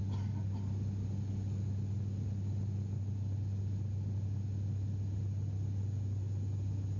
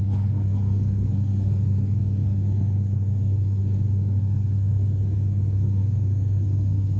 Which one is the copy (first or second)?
second